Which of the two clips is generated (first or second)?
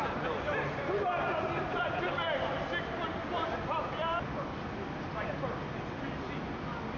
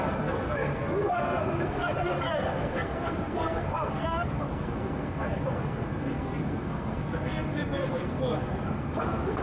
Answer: second